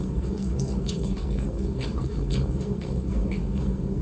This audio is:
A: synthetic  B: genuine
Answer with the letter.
A